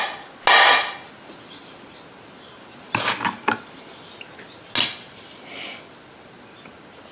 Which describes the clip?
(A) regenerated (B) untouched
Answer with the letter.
B